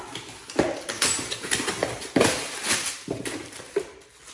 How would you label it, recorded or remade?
recorded